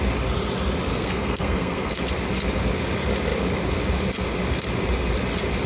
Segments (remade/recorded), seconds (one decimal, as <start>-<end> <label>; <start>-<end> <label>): 0.0-0.9 recorded; 0.9-2.0 remade; 2.0-5.7 recorded